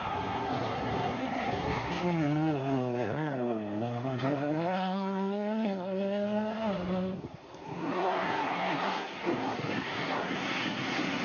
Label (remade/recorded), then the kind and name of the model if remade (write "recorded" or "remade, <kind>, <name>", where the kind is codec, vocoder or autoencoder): remade, codec, SNAC